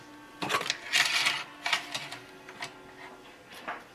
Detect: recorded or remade recorded